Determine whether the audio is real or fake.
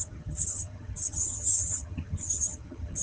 fake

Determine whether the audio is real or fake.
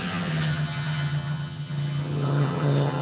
fake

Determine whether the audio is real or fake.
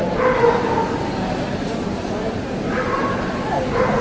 real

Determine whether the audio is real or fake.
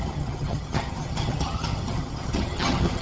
fake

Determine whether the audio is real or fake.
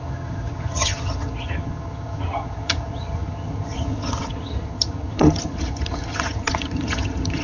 fake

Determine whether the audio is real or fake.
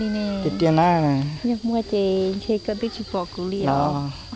real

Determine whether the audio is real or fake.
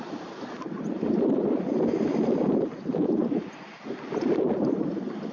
real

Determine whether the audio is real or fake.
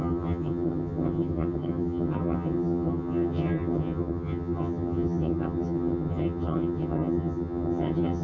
fake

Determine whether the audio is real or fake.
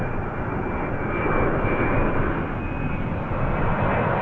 real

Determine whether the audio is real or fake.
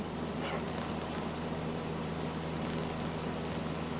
real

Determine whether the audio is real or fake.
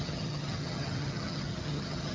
fake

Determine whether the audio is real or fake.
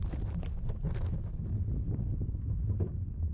real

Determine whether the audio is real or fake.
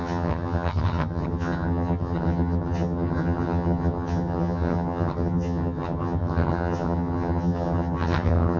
fake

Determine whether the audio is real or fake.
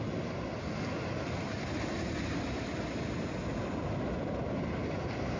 real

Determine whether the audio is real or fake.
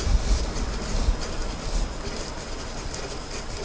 real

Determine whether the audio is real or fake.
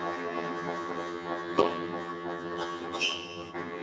fake